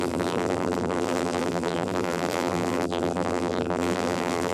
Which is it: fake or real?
fake